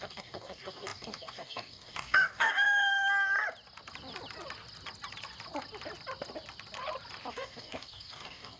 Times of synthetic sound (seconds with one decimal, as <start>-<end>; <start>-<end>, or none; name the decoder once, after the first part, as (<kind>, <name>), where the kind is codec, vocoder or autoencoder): 0.0-2.9 (codec, DAC); 7.3-8.6